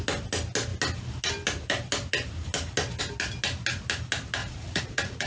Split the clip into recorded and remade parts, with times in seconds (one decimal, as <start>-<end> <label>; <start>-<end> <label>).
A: 0.0-4.4 recorded; 4.4-5.3 remade